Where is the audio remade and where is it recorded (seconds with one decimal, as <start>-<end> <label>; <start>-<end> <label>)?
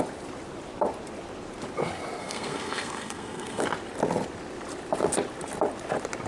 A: 0.0-2.2 recorded; 2.2-3.6 remade; 3.6-6.3 recorded